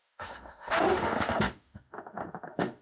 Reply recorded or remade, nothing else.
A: remade